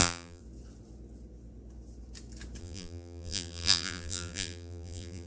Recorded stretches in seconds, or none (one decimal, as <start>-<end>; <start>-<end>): 0.4-2.6